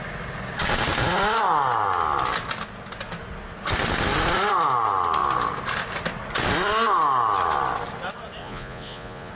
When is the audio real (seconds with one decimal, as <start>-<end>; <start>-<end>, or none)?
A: 0.0-8.4